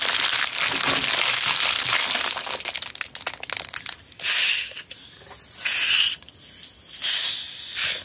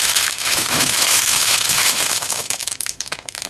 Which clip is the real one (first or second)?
first